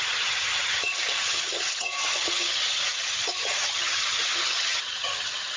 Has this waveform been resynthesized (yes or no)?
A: yes